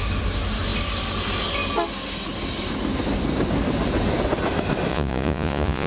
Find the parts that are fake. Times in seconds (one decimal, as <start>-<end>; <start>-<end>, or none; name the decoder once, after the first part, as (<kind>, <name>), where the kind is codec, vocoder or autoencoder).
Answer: 4.9-5.9 (vocoder, Vocos)